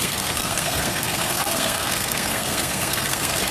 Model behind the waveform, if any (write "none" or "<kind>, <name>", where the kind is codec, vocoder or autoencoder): codec, SNAC